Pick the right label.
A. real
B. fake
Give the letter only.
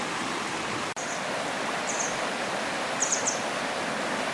A